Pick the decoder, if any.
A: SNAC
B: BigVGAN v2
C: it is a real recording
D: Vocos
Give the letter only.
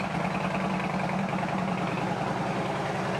B